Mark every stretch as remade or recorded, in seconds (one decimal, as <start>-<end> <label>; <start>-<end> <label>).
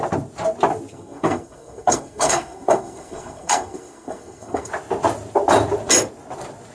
0.0-0.9 recorded; 0.9-4.7 remade; 4.7-6.7 recorded